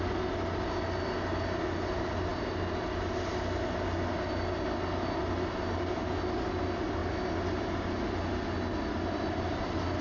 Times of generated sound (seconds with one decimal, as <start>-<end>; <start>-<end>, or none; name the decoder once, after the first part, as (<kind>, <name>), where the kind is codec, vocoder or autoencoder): none